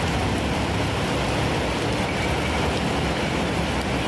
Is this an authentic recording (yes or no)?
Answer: yes